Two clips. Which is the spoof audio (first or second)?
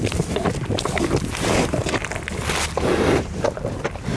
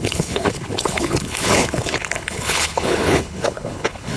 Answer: second